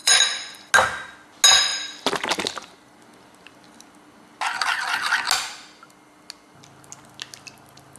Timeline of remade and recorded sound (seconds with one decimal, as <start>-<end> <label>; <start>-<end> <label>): 0.0-0.7 remade; 0.7-8.0 recorded